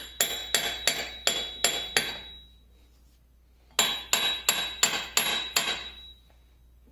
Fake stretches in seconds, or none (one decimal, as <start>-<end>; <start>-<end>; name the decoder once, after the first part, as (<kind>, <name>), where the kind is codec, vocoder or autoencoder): 5.3-6.3 (vocoder, BigVGAN v2)